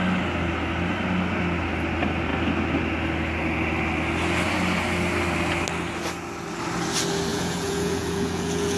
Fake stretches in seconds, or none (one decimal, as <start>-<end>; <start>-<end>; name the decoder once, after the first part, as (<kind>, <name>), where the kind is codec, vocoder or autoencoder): 7.3-8.8 (vocoder, Vocos)